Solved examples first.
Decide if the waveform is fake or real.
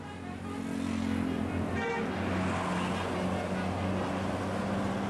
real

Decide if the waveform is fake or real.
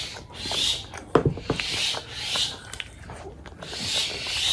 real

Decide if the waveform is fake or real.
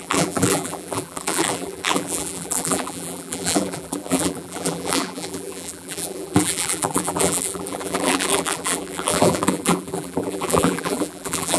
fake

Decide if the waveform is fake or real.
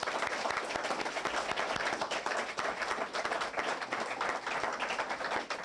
real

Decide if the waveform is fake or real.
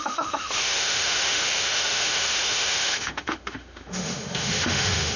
fake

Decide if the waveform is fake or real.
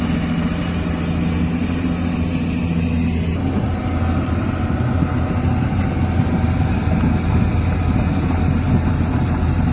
real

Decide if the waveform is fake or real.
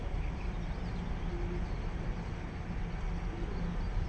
real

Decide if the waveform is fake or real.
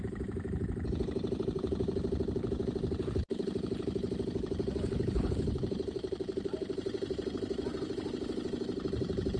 fake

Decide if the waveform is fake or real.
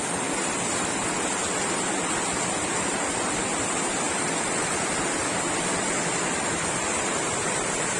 real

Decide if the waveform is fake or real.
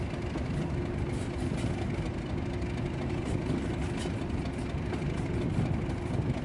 real